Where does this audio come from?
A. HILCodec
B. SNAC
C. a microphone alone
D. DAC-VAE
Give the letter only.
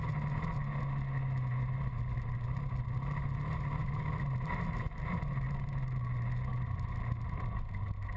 C